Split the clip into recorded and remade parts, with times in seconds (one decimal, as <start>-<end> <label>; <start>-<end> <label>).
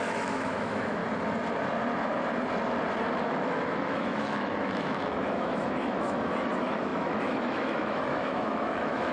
0.0-1.0 remade; 1.0-3.2 recorded; 3.2-9.1 remade